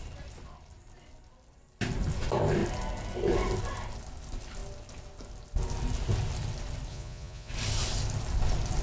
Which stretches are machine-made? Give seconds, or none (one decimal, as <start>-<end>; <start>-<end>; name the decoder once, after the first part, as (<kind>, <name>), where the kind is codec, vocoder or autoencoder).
6.9-7.5 (vocoder, Vocos)

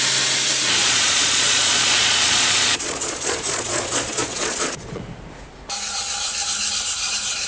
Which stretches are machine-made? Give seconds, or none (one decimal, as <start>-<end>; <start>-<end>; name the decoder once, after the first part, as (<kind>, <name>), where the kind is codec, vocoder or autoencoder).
0.8-5.0 (vocoder, Vocos)

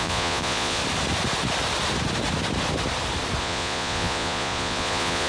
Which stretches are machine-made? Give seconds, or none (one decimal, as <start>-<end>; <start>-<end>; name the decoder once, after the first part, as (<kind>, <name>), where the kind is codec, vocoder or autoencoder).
0.0-0.8 (vocoder, Vocos); 3.4-5.3

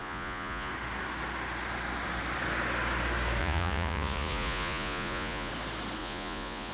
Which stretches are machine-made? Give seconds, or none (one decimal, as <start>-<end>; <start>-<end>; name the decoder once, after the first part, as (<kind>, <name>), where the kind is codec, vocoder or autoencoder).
0.0-0.7 (vocoder, Vocos); 3.4-5.5; 6.0-6.7

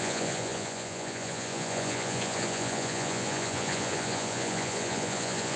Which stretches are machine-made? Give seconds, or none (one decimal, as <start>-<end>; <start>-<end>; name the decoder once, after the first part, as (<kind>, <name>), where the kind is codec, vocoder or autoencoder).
0.0-5.6 (vocoder, Vocos)

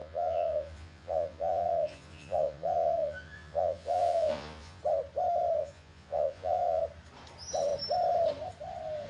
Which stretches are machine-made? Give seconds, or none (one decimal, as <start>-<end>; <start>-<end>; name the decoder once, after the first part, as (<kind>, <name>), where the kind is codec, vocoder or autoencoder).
0.0-4.8 (vocoder, Vocos); 5.6-6.8

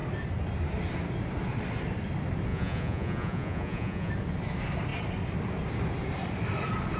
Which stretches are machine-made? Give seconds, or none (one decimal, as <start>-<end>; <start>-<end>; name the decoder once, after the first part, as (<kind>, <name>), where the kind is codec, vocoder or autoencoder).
2.5-4.1 (vocoder, Vocos)

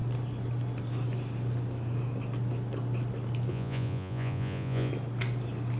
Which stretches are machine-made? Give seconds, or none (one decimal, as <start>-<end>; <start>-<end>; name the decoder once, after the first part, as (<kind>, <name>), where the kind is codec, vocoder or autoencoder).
3.5-4.9 (vocoder, Vocos)